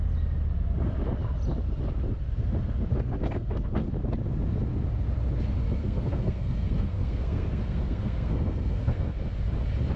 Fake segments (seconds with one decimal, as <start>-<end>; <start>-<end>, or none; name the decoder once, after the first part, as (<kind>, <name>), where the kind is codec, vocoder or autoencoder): 2.9-3.9 (codec, SNAC); 5.8-9.2